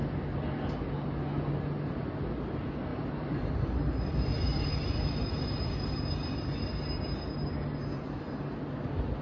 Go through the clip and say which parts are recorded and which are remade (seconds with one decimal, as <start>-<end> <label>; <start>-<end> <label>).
0.0-2.9 recorded; 2.9-3.5 remade; 3.5-9.2 recorded